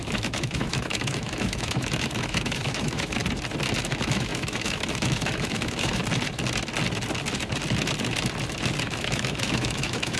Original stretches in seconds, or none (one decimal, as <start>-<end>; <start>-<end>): 3.2-3.8; 6.0-8.8